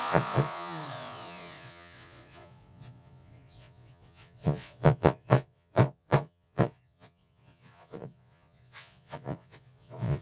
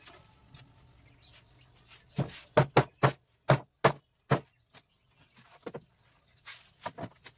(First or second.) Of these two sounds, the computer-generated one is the first